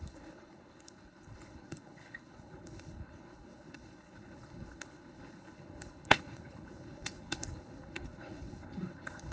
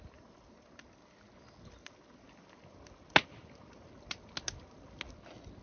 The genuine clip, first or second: second